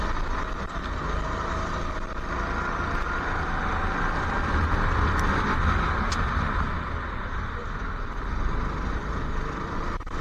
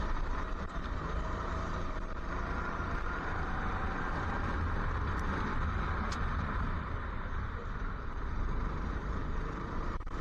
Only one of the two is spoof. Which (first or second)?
second